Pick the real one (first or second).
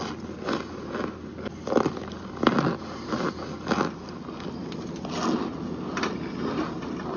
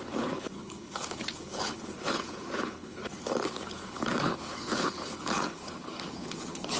first